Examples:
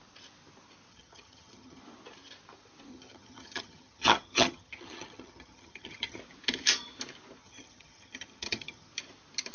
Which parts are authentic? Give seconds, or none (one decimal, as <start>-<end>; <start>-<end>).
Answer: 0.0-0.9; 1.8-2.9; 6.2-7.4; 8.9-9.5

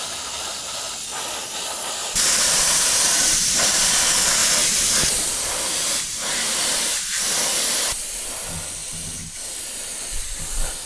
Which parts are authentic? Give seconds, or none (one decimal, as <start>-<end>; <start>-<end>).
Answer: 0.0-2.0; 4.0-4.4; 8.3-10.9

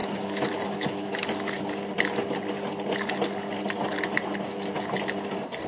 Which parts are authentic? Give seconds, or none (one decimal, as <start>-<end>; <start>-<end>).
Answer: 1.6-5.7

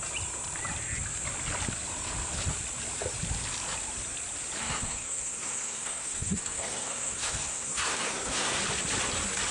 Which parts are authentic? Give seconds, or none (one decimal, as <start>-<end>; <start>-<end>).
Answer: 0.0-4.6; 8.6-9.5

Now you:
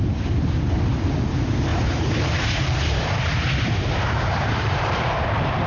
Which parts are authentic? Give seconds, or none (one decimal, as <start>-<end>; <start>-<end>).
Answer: 0.0-1.7; 5.1-5.7